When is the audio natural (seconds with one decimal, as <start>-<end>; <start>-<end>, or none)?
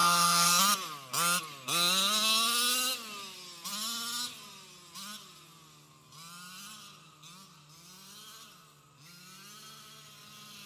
0.6-10.7